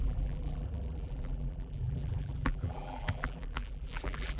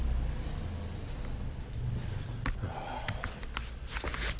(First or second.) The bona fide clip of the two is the second